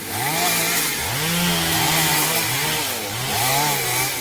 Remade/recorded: recorded